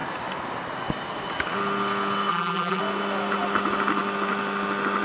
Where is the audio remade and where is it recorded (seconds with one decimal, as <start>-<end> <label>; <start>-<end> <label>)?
0.0-2.3 recorded; 2.3-2.8 remade; 2.8-5.0 recorded